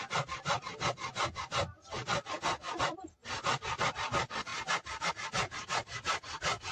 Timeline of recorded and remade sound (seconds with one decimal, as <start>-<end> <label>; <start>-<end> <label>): 0.0-6.7 recorded